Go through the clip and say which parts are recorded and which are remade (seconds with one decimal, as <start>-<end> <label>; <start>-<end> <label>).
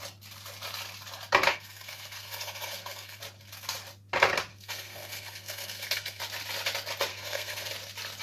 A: 0.0-1.5 recorded; 1.5-3.2 remade; 3.2-4.5 recorded; 4.5-6.2 remade; 6.2-7.1 recorded; 7.1-7.7 remade; 7.7-8.2 recorded